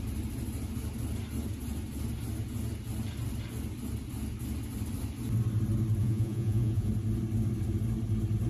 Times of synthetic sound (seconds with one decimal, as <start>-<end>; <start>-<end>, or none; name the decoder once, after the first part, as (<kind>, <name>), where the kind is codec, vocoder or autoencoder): 6.0-6.9 (vocoder, Vocos)